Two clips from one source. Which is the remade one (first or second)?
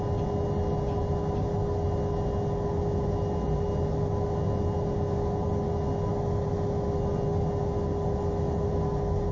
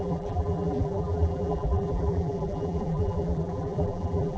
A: second